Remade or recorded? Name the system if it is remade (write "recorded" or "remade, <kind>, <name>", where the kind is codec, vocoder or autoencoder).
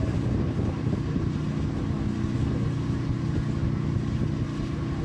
recorded